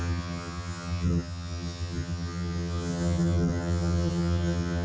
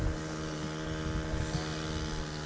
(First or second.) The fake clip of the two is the first